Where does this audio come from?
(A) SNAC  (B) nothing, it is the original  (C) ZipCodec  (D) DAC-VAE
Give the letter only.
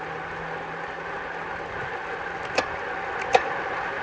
B